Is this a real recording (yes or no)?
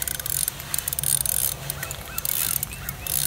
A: yes